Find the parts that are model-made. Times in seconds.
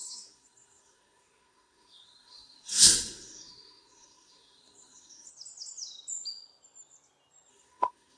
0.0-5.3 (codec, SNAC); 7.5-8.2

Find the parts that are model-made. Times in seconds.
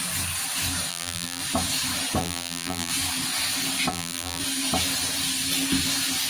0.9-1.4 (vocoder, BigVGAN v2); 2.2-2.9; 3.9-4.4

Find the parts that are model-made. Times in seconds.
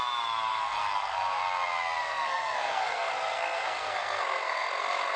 0.5-1.4 (codec, SNAC); 2.0-5.2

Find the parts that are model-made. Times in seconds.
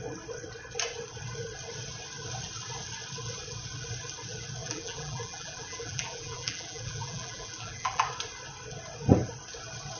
4.6-8.0 (vocoder, BigVGAN v2)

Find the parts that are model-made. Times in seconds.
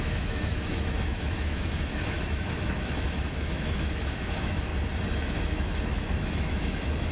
0.0-4.7 (autoencoder, DAC-VAE); 5.2-7.1